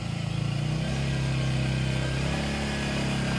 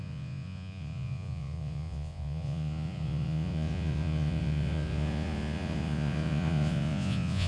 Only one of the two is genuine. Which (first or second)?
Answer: first